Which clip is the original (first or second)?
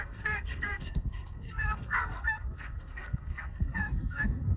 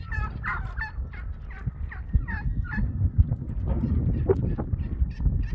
second